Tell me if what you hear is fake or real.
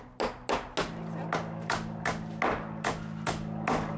real